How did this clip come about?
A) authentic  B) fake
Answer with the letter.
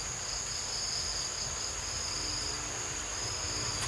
A